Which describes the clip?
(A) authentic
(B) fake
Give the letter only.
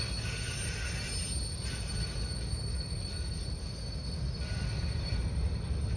A